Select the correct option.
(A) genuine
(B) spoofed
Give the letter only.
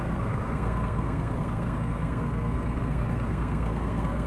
B